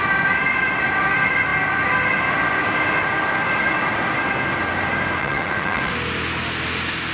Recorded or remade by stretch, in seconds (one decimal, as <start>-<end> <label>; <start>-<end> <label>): 0.0-5.2 recorded; 5.2-5.9 remade; 5.9-7.1 recorded